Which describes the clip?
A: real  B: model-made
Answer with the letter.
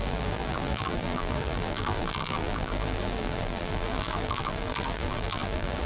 B